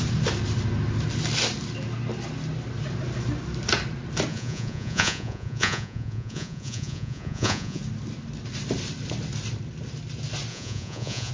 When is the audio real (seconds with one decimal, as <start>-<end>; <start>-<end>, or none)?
0.0-4.3; 7.8-10.5